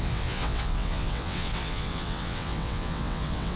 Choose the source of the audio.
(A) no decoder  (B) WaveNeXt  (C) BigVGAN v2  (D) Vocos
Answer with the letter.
B